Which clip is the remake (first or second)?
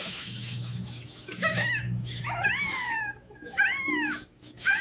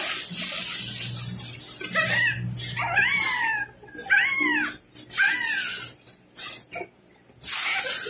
first